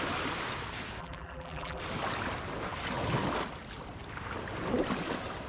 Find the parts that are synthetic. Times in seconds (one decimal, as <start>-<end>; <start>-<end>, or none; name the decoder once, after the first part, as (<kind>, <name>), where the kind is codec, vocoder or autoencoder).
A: 1.0-1.8 (vocoder, BigVGAN v2)